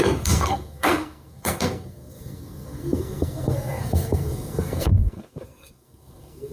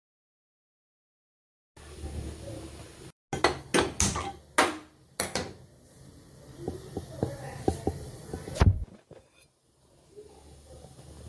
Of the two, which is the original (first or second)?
second